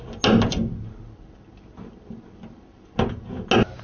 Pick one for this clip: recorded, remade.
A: recorded